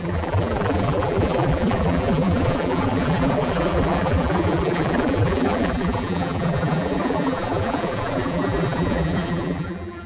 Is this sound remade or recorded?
remade